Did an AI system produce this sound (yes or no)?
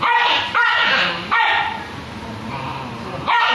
yes